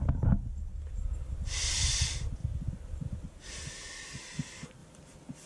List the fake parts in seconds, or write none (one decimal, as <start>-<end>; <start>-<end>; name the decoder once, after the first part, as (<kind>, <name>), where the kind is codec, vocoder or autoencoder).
none